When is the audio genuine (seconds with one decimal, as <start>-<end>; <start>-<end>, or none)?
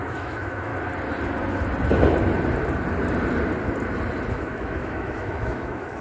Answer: 0.7-4.3